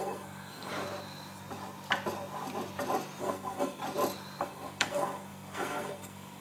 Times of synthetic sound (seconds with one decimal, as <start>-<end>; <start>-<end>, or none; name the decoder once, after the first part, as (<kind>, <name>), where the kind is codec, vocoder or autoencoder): 0.0-0.7 (codec, SNAC); 3.2-3.8; 4.4-6.4